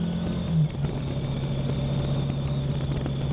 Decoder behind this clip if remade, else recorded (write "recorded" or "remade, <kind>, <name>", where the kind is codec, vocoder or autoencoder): recorded